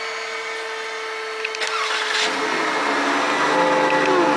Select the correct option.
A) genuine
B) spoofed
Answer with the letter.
A